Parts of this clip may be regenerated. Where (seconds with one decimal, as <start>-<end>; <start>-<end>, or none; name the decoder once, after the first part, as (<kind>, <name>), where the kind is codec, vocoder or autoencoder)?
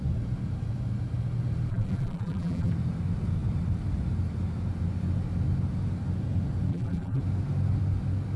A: 1.7-2.7 (vocoder, BigVGAN v2); 6.7-7.2